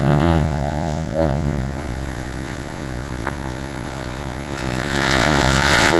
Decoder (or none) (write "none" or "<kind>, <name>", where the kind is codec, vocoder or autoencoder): vocoder, Vocos